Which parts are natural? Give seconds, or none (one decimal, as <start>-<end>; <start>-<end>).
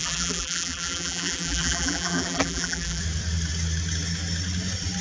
3.0-5.0